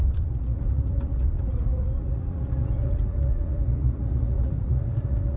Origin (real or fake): fake